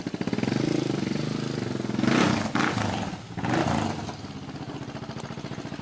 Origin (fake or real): real